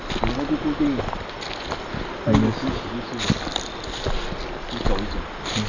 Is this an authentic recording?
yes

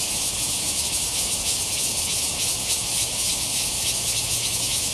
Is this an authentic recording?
no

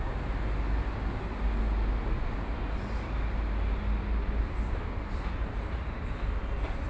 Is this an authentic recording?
yes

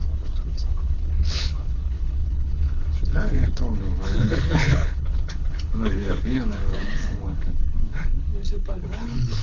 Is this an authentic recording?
no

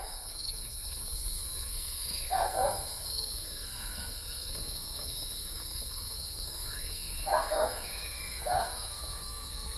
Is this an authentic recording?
no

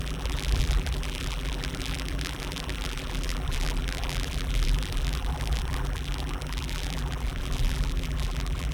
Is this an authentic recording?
no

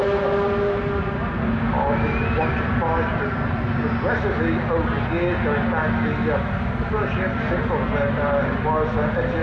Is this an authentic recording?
yes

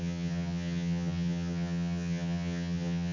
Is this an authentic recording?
no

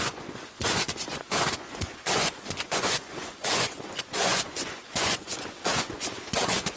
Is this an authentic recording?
no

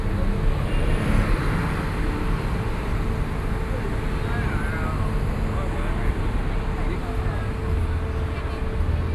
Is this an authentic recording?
yes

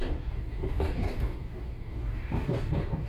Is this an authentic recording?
no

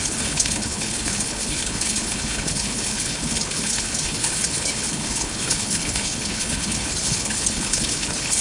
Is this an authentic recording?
no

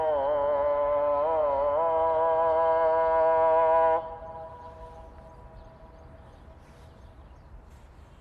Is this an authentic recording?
yes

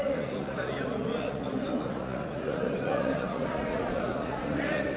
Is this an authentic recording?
no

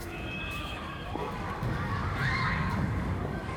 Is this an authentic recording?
no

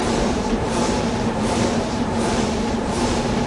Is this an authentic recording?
no